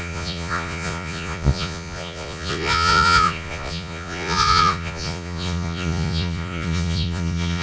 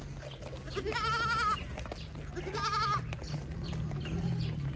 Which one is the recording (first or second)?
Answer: second